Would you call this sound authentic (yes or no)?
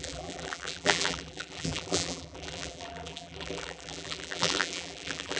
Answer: no